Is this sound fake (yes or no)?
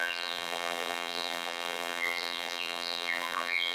yes